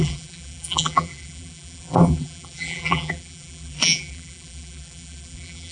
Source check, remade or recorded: remade